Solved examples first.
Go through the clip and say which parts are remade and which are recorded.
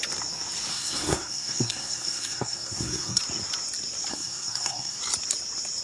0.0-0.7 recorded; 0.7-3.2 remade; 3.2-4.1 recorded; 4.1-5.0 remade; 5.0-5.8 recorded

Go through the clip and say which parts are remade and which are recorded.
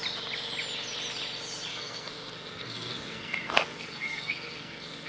0.0-1.7 recorded; 1.7-5.1 remade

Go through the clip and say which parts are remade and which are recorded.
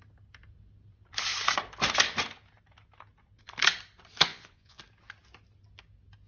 0.0-4.3 recorded; 4.3-4.8 remade; 4.8-6.3 recorded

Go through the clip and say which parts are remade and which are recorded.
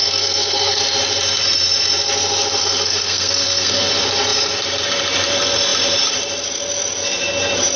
0.0-0.8 remade; 0.8-2.6 recorded; 2.6-3.9 remade; 3.9-7.8 recorded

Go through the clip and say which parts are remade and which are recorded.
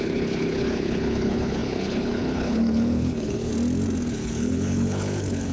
0.0-3.5 remade; 3.5-4.1 recorded; 4.1-5.5 remade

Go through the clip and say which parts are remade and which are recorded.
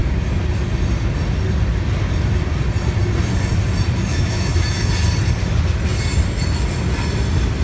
0.0-4.1 recorded; 4.1-4.9 remade; 4.9-7.6 recorded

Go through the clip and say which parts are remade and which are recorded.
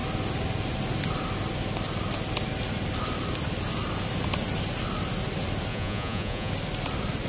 0.0-5.7 recorded; 5.7-6.5 remade; 6.5-7.3 recorded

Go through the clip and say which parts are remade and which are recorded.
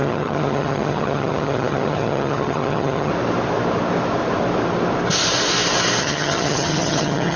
0.0-3.1 remade; 3.1-6.0 recorded; 6.0-7.4 remade